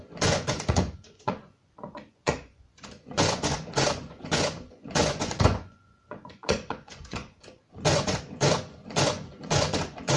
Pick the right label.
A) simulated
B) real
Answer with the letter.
A